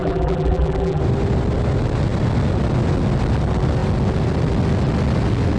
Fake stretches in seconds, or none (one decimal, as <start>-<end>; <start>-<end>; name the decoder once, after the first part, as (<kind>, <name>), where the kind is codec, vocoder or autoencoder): 0.0-1.0 (vocoder, BigVGAN v2)